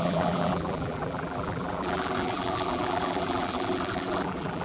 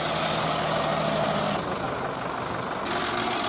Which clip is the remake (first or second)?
first